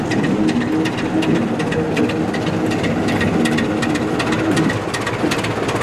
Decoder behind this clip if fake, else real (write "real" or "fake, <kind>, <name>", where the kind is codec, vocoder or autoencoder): real